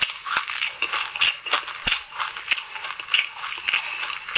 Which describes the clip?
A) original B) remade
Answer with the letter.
A